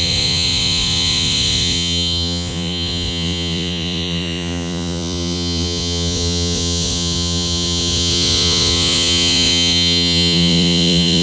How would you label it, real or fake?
fake